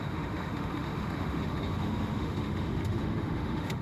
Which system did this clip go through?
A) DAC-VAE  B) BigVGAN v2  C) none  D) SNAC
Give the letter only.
A